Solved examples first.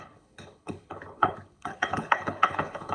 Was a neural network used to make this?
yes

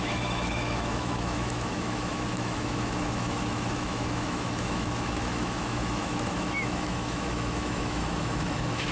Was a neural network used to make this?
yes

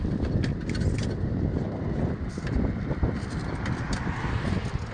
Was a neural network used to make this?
no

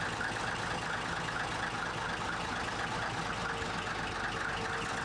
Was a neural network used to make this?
no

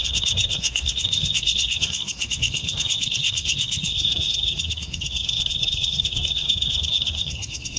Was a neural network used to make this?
yes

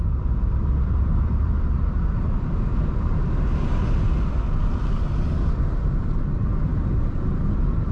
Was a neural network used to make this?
yes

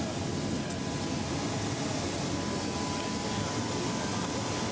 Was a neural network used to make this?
no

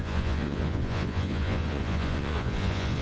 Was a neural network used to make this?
yes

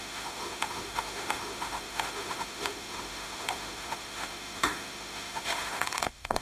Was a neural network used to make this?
yes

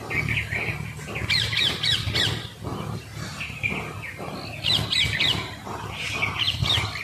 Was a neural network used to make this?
no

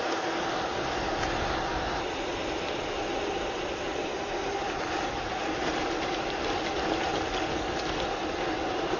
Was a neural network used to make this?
no